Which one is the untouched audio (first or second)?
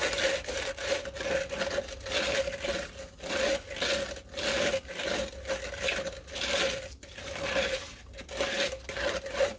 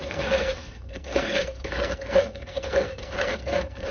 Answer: first